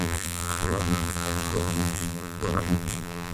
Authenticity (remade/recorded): remade